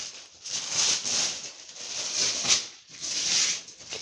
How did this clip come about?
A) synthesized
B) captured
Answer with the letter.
B